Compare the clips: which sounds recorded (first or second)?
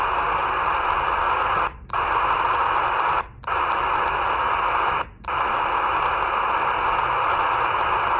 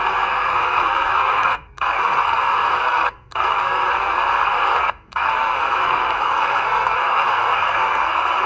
first